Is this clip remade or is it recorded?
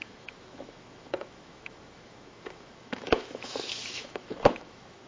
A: remade